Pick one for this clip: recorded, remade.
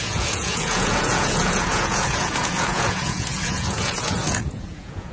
remade